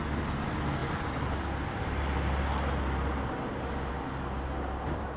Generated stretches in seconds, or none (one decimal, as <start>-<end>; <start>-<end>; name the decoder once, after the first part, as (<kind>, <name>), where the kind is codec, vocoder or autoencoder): none